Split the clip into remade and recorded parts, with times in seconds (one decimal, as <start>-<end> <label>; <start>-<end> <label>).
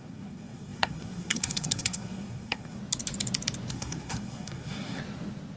0.0-2.8 remade; 2.8-3.7 recorded; 3.7-5.0 remade; 5.0-5.6 recorded